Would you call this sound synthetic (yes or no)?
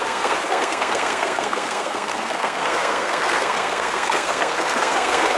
yes